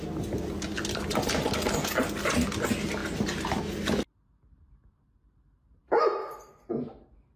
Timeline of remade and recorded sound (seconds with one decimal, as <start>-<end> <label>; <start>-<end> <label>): 0.0-7.4 recorded